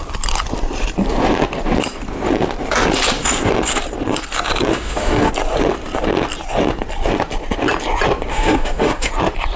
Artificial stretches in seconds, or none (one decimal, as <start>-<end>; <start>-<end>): 4.7-5.3; 8.3-9.1